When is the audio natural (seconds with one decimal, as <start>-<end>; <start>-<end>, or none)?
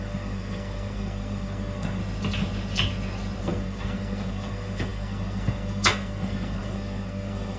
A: 2.0-3.4